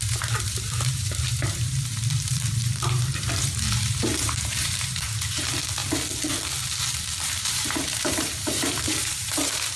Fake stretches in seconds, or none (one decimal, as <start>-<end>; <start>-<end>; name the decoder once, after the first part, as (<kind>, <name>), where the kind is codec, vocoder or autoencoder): 0.0-5.8 (vocoder, BigVGAN v2); 7.2-9.8